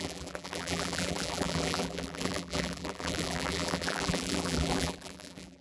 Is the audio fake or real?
fake